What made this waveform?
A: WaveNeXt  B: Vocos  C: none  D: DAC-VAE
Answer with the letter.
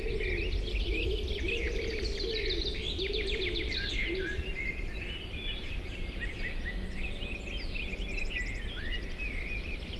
C